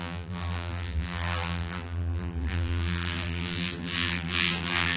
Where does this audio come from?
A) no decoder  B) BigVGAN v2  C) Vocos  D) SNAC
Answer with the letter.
B